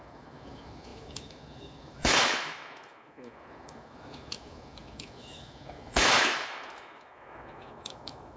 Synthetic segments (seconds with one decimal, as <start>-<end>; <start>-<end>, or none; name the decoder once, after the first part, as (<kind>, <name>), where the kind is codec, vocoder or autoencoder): 0.0-8.4 (autoencoder, DAC-VAE)